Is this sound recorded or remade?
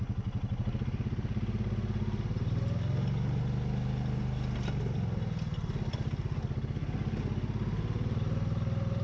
recorded